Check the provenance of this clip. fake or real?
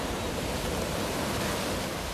real